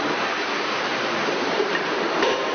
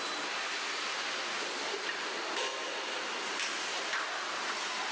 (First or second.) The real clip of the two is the second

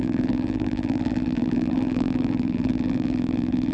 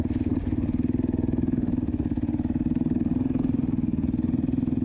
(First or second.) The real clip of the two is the second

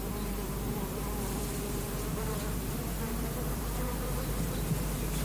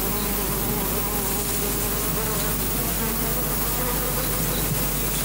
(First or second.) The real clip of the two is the second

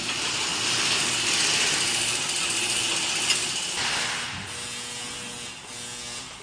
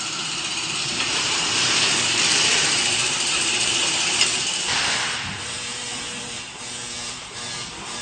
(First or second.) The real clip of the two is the first